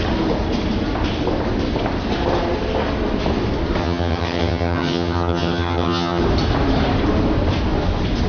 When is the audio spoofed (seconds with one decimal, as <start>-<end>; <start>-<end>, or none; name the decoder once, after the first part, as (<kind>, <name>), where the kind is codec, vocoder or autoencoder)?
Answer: 3.8-6.2 (vocoder, HiFi-GAN)